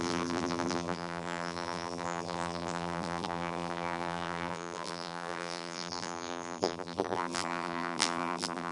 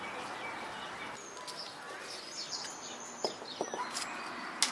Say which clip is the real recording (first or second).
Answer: second